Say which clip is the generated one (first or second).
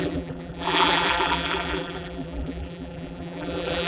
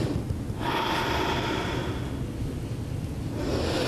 first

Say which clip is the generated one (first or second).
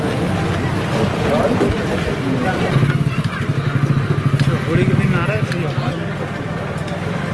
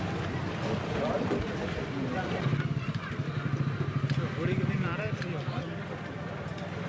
second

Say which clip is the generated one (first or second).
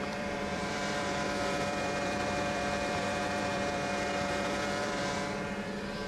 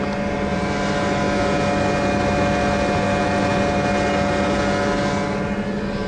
first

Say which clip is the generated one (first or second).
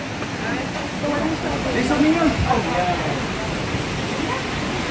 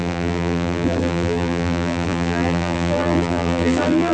second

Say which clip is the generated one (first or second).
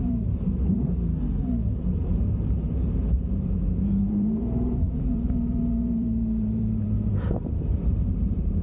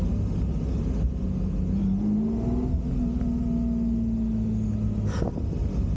first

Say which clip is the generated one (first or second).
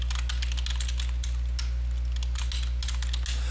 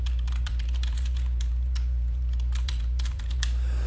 second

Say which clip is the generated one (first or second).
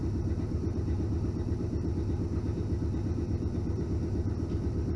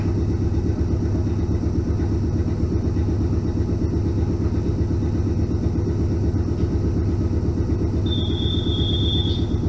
first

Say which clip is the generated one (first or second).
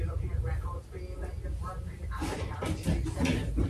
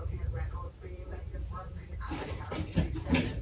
second